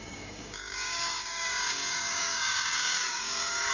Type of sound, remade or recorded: remade